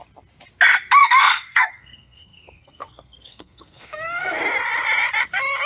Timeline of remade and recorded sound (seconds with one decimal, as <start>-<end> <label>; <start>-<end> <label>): 0.0-1.0 recorded; 1.0-4.4 remade; 4.4-5.7 recorded